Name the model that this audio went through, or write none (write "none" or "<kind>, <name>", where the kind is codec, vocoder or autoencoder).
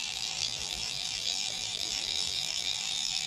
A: vocoder, BigVGAN v2